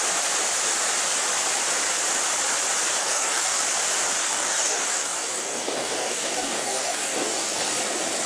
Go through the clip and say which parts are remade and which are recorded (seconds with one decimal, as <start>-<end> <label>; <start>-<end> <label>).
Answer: 0.0-3.0 recorded; 3.0-3.6 remade; 3.6-4.2 recorded; 4.2-7.8 remade; 7.8-8.3 recorded